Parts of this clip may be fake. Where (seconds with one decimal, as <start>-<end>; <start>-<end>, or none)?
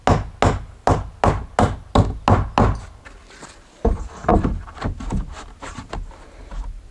none